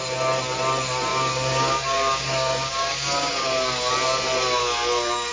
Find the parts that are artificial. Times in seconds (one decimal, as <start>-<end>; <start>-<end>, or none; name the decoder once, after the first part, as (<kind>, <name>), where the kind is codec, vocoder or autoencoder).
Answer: 1.1-3.9 (codec, DAC); 4.6-5.3